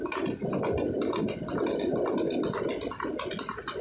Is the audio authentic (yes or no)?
yes